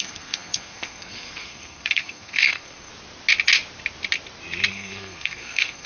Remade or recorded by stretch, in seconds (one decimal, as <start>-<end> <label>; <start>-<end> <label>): 0.0-2.9 remade; 2.9-4.7 recorded; 4.7-5.9 remade